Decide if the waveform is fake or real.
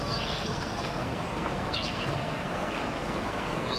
fake